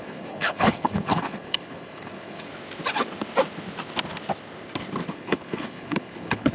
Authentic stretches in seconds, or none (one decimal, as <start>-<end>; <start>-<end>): 2.5-5.1